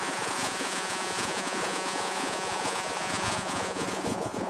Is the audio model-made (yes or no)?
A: yes